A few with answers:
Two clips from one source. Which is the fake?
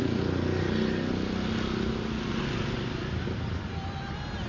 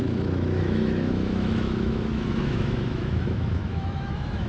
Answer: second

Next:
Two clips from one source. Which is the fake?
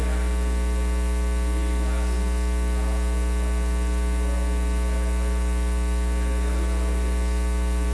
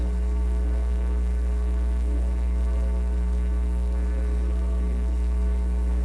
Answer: second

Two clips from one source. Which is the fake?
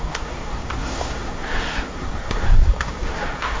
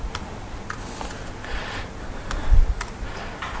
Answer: first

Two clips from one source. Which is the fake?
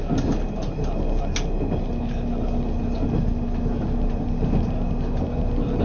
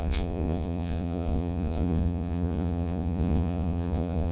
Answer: second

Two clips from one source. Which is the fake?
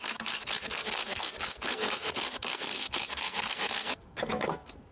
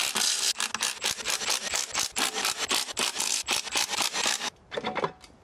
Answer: first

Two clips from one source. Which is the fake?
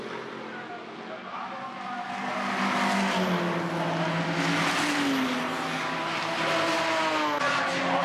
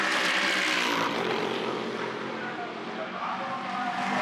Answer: second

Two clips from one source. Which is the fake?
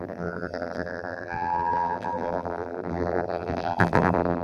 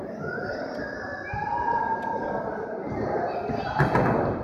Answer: first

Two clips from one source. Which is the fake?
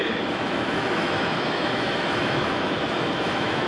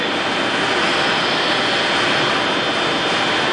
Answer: first